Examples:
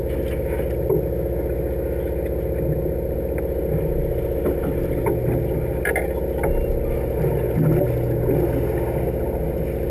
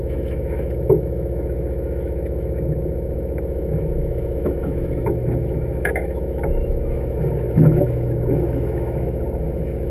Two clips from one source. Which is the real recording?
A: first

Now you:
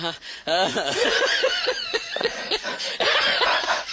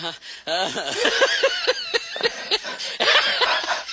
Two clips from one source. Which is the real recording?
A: second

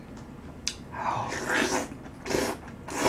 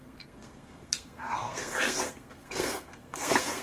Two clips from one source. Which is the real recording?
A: first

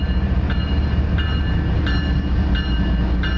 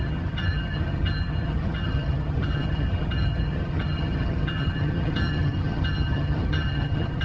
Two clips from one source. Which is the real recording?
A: first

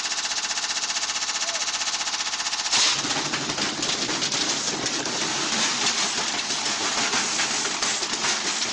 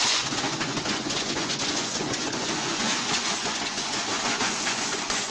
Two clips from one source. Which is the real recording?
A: first